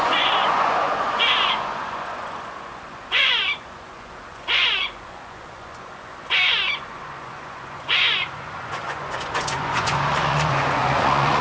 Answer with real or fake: fake